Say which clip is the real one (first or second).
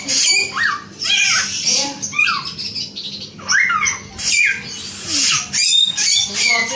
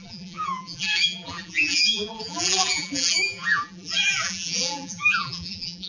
first